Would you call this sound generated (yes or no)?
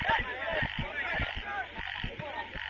no